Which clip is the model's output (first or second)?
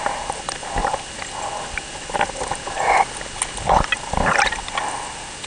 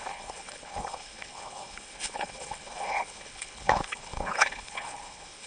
second